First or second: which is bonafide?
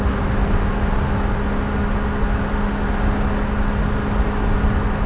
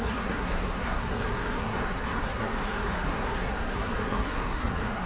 first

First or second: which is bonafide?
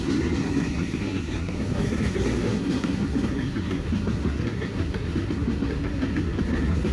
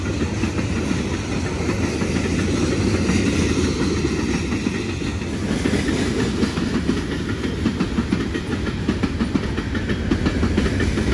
second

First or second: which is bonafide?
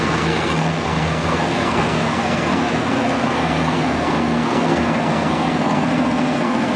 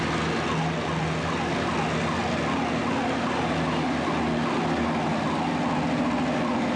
second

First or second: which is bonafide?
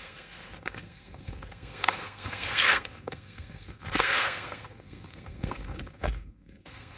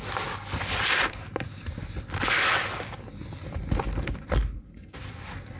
second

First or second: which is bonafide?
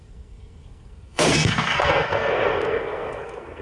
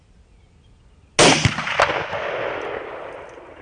second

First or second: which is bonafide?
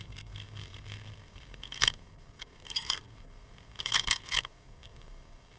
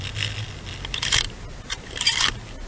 second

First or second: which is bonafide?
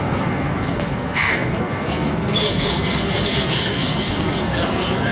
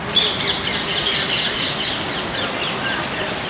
second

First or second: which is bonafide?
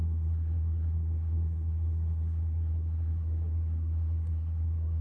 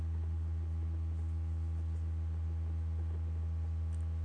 second